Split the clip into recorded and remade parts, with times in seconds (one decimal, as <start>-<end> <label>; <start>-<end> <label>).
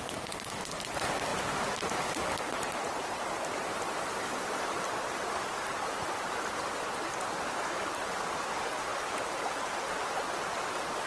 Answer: 0.0-8.9 remade; 8.9-10.1 recorded; 10.1-11.1 remade